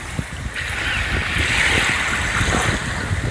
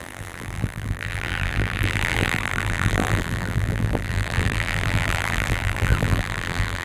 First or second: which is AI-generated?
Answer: second